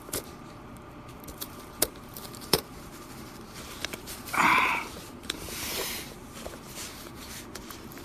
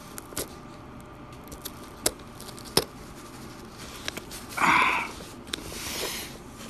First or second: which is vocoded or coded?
first